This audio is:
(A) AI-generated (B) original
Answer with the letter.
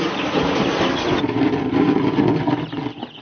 B